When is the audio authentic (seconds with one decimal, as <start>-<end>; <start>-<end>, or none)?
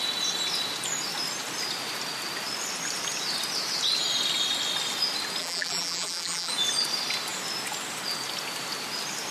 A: 0.0-5.4; 6.5-9.3